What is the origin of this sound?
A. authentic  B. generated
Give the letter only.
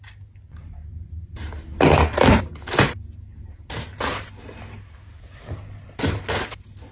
A